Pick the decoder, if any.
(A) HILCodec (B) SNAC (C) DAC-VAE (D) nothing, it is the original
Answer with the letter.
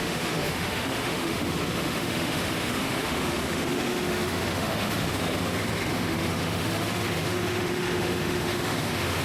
C